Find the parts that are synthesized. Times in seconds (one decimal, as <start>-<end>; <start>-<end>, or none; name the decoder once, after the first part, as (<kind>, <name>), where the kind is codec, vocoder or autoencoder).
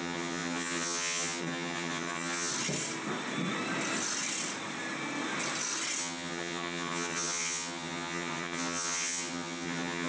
0.0-2.5 (vocoder, HiFi-GAN); 6.0-10.1